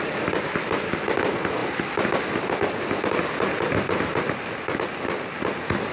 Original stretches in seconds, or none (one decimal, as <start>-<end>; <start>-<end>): 0.0-5.9